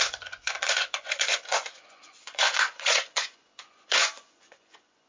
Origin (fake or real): fake